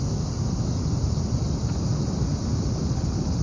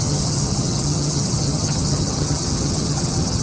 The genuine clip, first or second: first